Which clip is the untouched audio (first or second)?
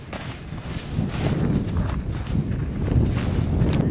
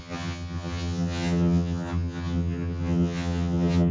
first